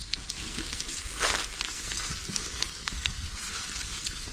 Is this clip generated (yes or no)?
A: yes